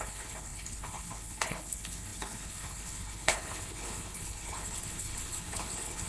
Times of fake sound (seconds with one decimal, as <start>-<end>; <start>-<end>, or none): 0.0-6.1